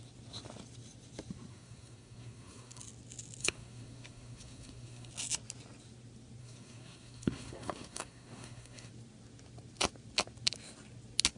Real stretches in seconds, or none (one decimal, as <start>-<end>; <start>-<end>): 0.0-1.5; 2.8-3.4; 5.1-6.4; 8.9-11.4